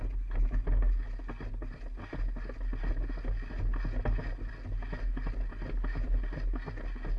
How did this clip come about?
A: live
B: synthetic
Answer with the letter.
A